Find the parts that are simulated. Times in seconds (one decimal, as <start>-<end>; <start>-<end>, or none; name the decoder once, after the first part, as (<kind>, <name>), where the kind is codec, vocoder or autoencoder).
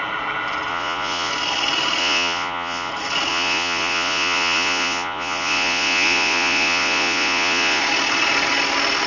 0.7-1.3 (vocoder, Vocos); 2.0-2.9; 3.3-7.8